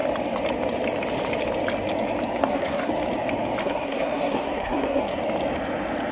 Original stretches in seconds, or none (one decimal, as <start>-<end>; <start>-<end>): 0.0-2.4; 2.9-3.6; 5.2-6.1